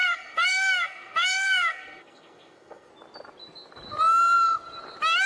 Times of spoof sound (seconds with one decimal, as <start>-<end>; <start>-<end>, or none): 0.0-2.9